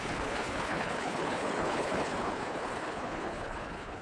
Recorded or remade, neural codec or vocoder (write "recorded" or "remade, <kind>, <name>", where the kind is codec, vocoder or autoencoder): remade, codec, HILCodec